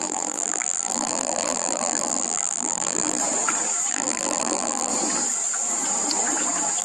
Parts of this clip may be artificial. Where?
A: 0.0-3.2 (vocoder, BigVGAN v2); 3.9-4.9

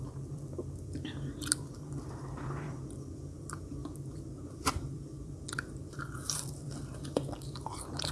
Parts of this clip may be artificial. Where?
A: 0.0-2.8 (vocoder, BigVGAN v2); 3.4-8.1

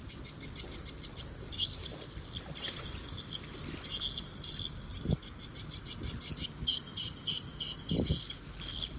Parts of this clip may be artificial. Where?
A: 4.9-6.3 (vocoder, BigVGAN v2)

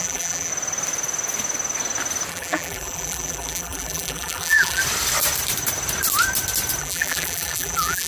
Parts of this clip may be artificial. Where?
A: 0.0-0.5 (vocoder, BigVGAN v2); 2.3-4.8; 6.8-8.1

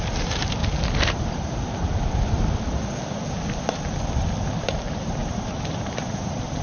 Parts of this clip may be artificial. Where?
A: 0.0-0.6 (vocoder, BigVGAN v2); 4.6-6.6

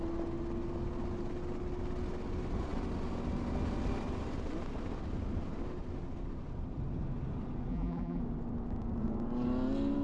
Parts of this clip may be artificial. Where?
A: 7.7-8.2 (vocoder, BigVGAN v2)